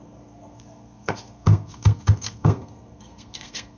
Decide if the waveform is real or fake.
fake